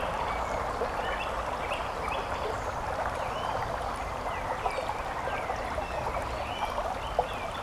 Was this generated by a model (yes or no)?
no